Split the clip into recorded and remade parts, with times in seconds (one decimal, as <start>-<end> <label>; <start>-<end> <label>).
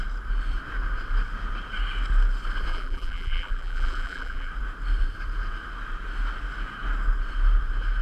0.0-2.7 recorded; 2.7-4.5 remade; 4.5-8.0 recorded